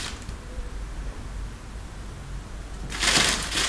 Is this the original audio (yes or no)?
yes